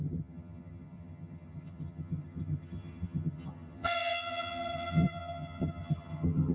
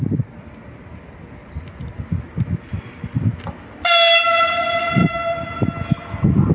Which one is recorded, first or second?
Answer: second